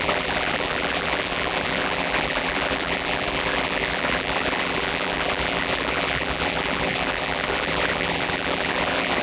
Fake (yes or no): yes